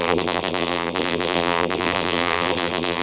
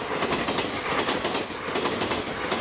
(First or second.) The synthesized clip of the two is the first